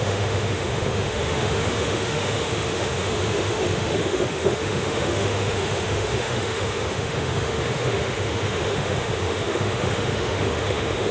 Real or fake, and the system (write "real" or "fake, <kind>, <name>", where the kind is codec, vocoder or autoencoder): fake, autoencoder, DAC-VAE